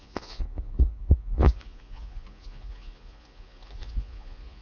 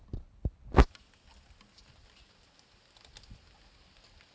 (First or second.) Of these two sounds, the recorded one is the second